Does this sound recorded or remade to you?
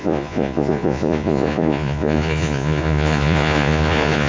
remade